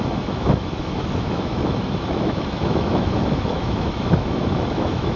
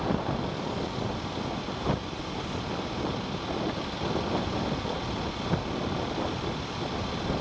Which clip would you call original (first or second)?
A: second